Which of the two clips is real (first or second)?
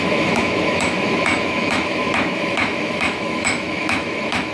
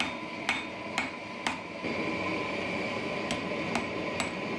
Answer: second